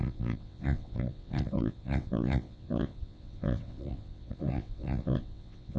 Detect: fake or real fake